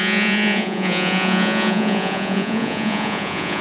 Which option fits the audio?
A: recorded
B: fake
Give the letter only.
B